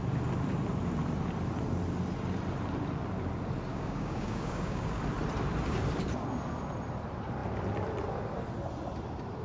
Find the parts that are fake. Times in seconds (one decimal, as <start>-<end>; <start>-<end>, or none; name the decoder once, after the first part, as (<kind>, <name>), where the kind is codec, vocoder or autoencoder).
3.7-5.0 (codec, DAC)